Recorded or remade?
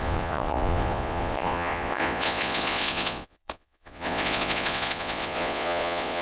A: remade